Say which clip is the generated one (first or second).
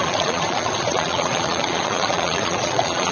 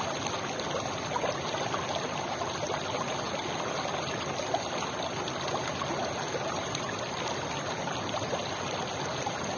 first